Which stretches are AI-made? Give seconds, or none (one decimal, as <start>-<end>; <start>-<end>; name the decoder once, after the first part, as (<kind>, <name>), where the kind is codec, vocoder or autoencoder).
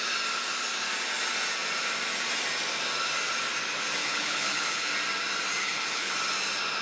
4.0-4.9 (codec, HILCodec); 5.6-6.1